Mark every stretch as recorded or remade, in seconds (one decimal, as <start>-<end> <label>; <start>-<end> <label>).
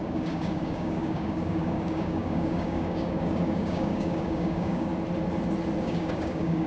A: 0.0-4.9 remade; 4.9-5.8 recorded; 5.8-6.7 remade